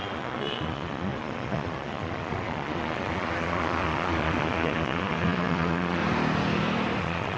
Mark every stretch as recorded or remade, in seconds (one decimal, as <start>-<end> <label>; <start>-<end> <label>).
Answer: 0.0-6.0 remade; 6.0-7.0 recorded; 7.0-7.4 remade